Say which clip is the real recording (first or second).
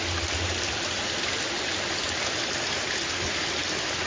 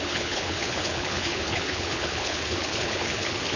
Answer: first